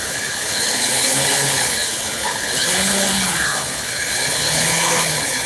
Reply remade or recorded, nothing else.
remade